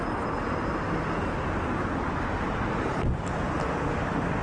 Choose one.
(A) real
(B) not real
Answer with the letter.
A